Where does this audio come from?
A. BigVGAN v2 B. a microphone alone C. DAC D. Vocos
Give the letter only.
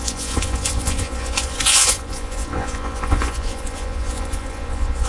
D